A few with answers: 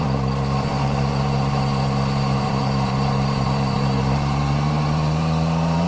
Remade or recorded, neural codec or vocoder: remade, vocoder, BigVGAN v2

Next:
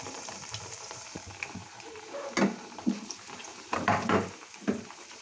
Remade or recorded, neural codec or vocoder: remade, vocoder, BigVGAN v2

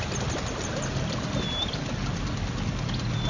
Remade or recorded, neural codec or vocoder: recorded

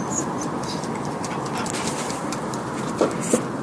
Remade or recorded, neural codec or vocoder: recorded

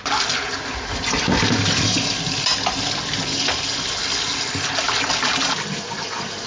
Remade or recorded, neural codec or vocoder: recorded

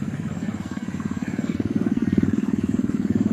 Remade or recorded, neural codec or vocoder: remade, codec, SNAC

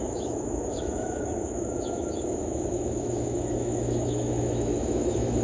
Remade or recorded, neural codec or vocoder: remade, autoencoder, DAC-VAE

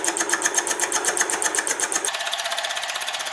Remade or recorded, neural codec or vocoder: recorded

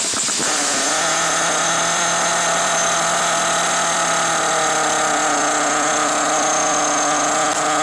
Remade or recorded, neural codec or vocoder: recorded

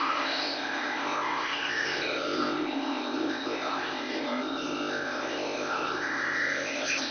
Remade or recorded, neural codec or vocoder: remade, codec, ZipCodec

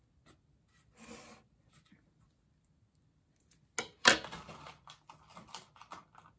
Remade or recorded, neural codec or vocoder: recorded